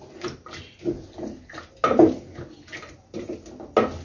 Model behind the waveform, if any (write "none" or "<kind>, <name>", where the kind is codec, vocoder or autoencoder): none